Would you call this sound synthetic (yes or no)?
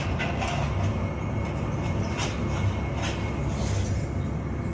no